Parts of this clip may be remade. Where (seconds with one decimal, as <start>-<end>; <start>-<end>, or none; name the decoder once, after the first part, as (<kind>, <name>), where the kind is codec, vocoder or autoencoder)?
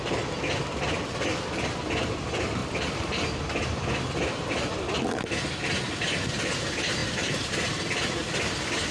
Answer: 2.6-4.5 (vocoder, BigVGAN v2)